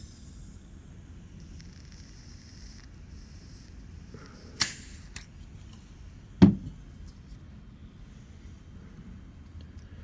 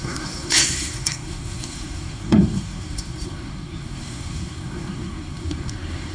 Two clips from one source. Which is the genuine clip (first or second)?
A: first